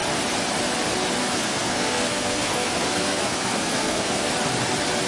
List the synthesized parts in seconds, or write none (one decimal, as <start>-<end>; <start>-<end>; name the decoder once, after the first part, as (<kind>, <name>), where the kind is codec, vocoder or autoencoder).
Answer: 1.2-4.3 (codec, SNAC)